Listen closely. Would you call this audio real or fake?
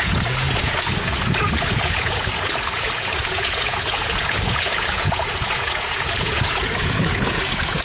fake